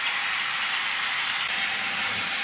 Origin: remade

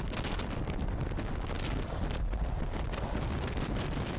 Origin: recorded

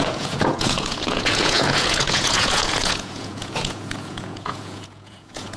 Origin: remade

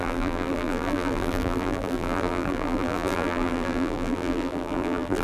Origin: remade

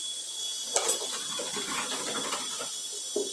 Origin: recorded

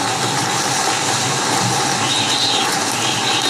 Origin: recorded